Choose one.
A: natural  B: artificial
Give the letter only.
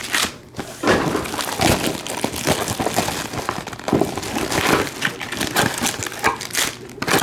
A